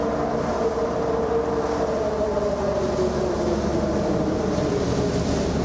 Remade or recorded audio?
recorded